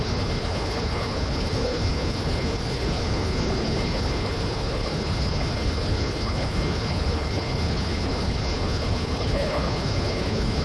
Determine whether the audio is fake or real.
fake